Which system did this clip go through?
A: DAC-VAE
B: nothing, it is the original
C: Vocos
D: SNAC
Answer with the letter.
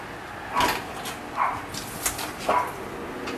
B